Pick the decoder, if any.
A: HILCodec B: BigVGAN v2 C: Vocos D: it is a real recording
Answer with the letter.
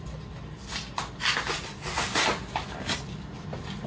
D